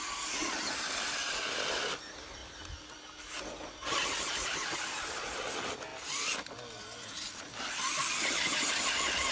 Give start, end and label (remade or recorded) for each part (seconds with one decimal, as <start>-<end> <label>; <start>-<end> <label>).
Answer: 0.0-9.3 recorded